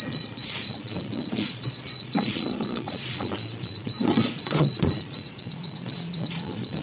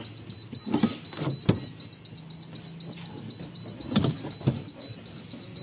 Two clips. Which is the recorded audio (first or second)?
second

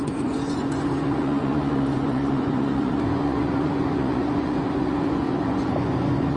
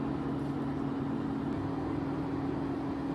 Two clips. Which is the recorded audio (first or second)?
second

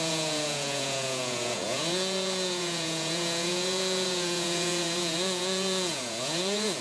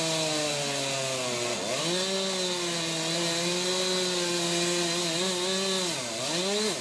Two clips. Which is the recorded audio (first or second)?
second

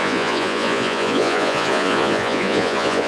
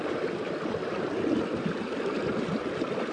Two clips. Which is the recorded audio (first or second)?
second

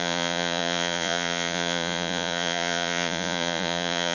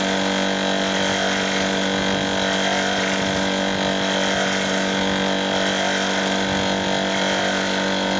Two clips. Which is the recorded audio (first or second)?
second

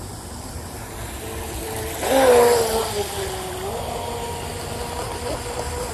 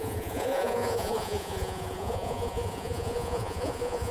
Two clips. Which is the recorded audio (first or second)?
first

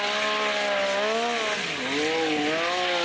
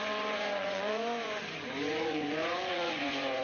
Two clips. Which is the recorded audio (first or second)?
first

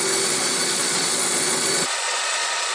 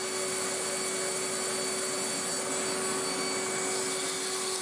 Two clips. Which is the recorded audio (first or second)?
second